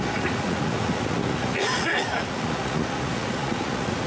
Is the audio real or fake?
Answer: fake